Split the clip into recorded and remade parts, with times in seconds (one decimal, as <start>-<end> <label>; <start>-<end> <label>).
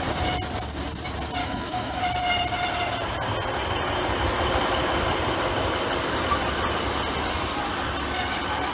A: 0.0-1.4 recorded; 1.4-2.0 remade; 2.0-8.7 recorded